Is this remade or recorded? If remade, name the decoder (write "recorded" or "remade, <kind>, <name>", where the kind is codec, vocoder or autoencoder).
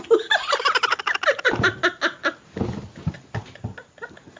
recorded